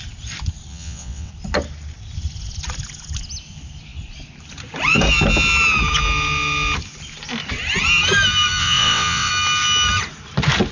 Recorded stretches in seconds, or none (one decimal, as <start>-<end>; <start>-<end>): 0.0-0.7; 1.3-8.6; 9.3-10.7